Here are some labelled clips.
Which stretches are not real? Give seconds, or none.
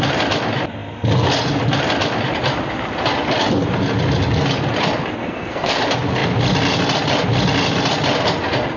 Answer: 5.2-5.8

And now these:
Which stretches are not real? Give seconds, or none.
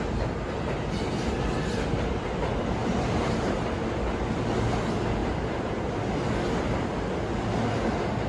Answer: 2.8-3.7; 5.2-6.1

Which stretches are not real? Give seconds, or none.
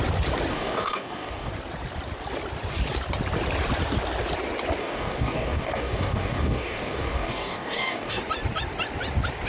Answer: 0.5-1.5; 4.8-8.2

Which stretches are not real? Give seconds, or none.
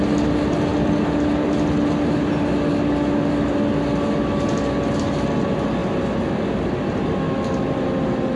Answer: none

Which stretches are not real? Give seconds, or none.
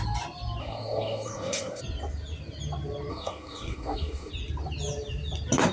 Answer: 0.6-1.8; 3.1-4.3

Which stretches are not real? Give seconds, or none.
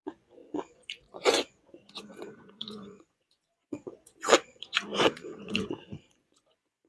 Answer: 0.0-6.9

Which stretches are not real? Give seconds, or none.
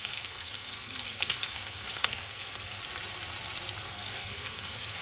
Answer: 0.0-2.8; 3.8-5.0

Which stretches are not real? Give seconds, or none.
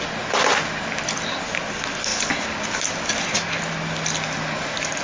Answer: none